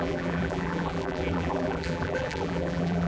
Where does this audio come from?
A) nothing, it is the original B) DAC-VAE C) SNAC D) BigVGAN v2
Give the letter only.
D